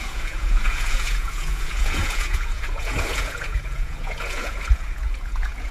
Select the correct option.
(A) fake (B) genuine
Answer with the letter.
A